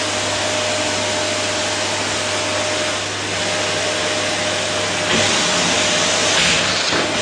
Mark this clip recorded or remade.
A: recorded